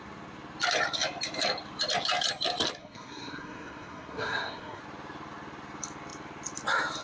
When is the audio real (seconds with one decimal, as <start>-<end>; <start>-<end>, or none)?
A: 0.0-2.8; 4.8-7.0